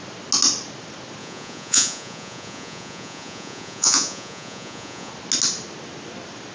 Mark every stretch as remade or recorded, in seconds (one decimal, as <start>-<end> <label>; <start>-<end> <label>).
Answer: 0.0-1.2 recorded; 1.2-5.1 remade; 5.1-6.5 recorded